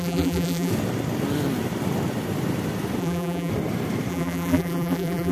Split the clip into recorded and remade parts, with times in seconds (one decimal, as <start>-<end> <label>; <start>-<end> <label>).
0.0-0.7 remade; 0.7-3.0 recorded; 3.0-3.5 remade; 3.5-4.1 recorded; 4.1-5.3 remade